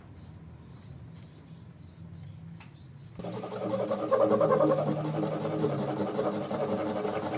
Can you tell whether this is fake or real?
real